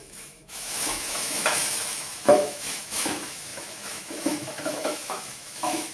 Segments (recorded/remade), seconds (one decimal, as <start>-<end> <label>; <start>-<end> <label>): 0.0-5.9 remade